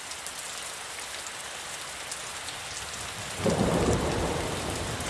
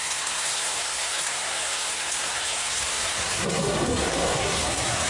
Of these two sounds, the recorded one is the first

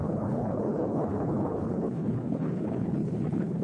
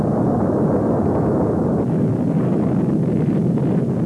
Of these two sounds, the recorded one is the second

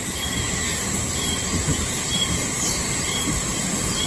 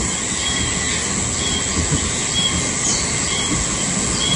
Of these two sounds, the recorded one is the second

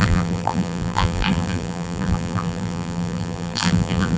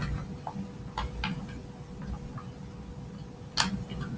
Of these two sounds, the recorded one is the second